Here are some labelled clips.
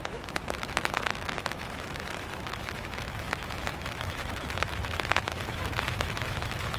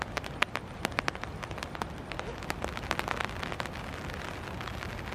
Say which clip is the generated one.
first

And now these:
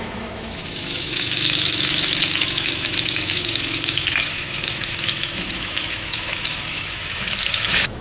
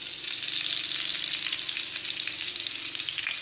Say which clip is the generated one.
first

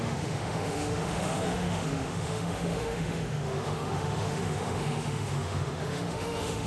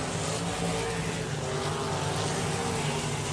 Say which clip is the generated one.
first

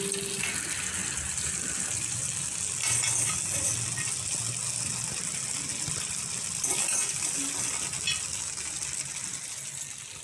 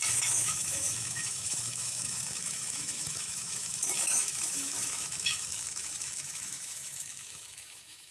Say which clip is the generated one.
second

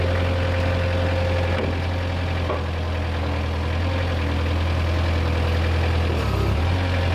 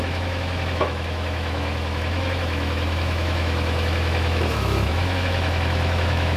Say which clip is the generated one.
second